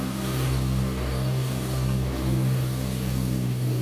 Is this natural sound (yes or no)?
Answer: no